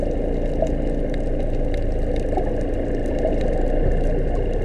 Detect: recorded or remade recorded